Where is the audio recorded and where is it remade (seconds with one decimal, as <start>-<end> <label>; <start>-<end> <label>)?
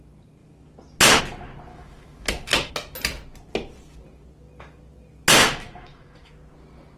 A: 0.0-1.7 recorded; 1.7-2.7 remade; 2.7-5.4 recorded; 5.4-6.3 remade; 6.3-7.0 recorded